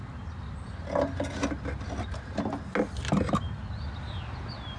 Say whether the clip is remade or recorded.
recorded